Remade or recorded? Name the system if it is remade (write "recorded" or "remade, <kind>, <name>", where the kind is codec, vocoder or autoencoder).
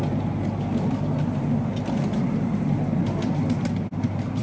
recorded